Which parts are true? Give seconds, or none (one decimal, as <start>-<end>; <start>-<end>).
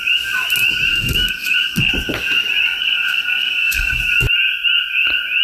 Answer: 0.0-0.9; 1.9-2.8; 4.0-5.4